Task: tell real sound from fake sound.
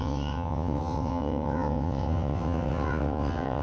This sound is fake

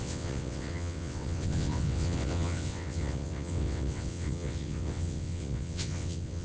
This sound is fake